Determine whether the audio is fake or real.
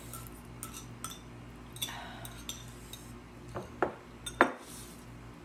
real